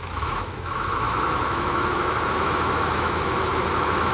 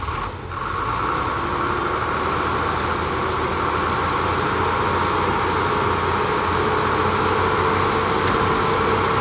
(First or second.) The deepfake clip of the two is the first